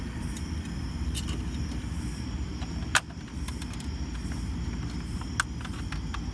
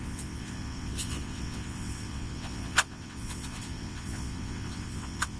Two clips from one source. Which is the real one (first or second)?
first